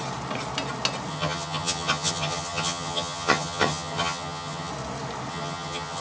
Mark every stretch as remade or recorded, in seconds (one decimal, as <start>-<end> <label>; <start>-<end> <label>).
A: 0.0-1.1 recorded; 1.1-4.7 remade; 4.7-5.3 recorded; 5.3-6.0 remade